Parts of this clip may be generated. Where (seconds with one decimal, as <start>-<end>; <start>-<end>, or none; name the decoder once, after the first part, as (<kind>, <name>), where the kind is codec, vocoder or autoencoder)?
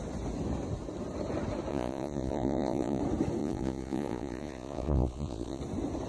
1.7-3.0 (vocoder, Vocos); 3.4-5.6